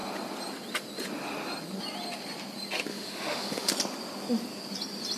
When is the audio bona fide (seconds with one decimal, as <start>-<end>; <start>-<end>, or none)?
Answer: 0.0-2.9; 3.7-5.2